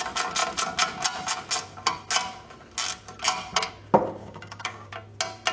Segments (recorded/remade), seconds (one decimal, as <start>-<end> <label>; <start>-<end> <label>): 0.0-4.2 recorded; 4.2-4.9 remade; 4.9-5.5 recorded